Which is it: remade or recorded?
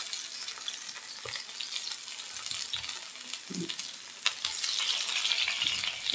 recorded